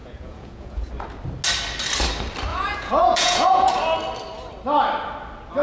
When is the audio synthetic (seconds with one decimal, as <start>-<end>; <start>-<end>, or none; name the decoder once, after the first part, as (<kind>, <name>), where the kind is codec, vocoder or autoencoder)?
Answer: 0.0-0.9 (vocoder, Vocos); 2.5-3.7